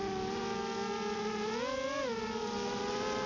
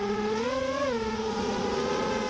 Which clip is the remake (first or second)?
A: second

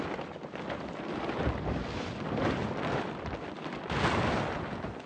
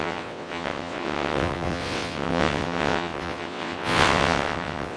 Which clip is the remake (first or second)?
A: second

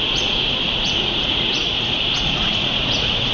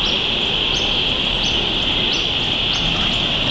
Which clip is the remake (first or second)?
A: first